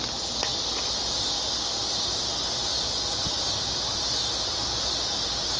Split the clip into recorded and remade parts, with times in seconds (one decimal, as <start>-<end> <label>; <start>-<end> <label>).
0.0-0.5 recorded; 0.5-1.3 remade; 1.3-2.7 recorded; 2.7-5.1 remade; 5.1-5.6 recorded